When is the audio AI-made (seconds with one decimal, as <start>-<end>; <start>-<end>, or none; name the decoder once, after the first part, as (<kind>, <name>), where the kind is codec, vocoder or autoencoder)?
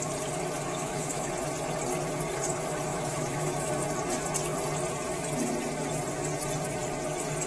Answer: 0.7-1.3 (autoencoder, DAC-VAE); 2.9-3.7